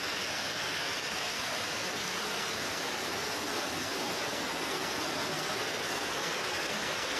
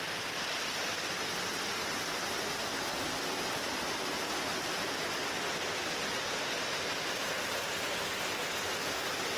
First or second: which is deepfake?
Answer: first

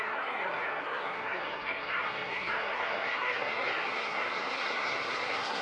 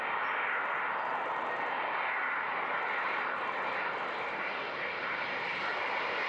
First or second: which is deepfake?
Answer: first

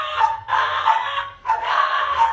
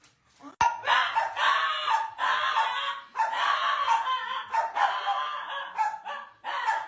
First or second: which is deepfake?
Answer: first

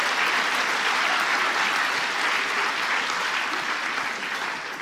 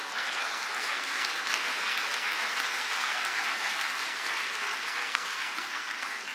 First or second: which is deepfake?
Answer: second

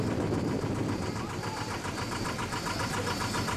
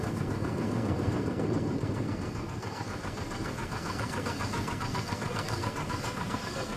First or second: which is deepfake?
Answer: second